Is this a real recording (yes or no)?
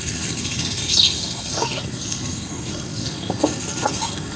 no